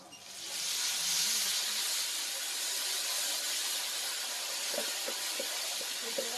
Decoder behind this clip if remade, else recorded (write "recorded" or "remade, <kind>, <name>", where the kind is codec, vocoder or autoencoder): recorded